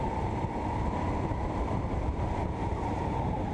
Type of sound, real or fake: fake